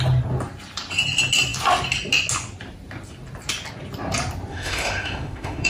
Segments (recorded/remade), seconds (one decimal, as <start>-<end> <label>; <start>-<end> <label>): 0.0-4.5 recorded; 4.5-5.7 remade